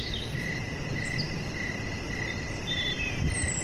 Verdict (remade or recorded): recorded